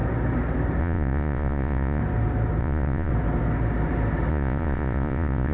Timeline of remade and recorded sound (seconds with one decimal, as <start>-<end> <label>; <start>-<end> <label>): 0.0-0.8 recorded; 0.8-2.0 remade; 2.0-2.6 recorded; 2.6-3.1 remade; 3.1-4.3 recorded; 4.3-5.5 remade